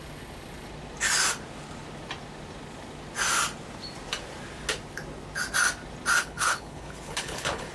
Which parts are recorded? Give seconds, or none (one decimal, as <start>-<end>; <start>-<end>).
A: 0.0-6.2